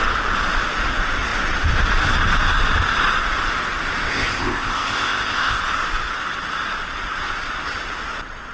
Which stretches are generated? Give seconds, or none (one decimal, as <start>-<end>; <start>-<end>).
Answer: 4.1-5.6